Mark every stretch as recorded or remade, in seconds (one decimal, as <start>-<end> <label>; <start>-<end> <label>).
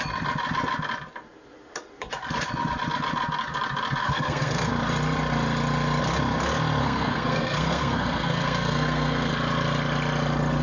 0.0-4.0 recorded; 4.0-4.7 remade; 4.7-6.8 recorded; 6.8-9.3 remade; 9.3-10.6 recorded